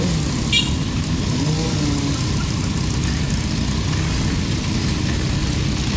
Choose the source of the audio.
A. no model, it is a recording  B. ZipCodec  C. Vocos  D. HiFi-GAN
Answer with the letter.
A